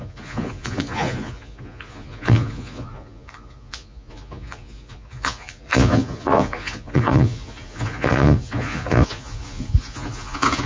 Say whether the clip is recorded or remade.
remade